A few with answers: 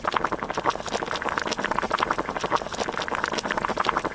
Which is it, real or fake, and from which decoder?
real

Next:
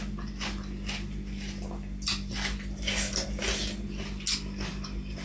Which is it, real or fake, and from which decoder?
real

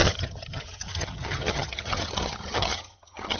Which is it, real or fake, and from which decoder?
fake, vocoder, HiFi-GAN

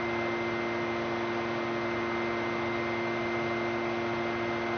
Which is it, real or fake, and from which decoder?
real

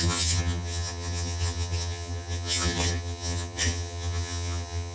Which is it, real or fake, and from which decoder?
fake, vocoder, HiFi-GAN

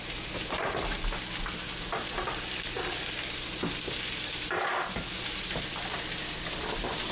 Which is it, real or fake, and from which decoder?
real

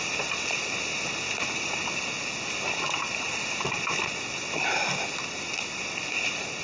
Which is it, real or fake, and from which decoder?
real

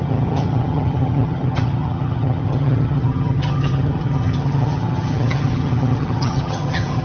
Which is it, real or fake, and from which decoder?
fake, vocoder, HiFi-GAN